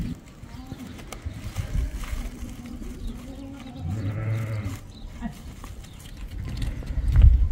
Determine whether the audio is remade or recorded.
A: recorded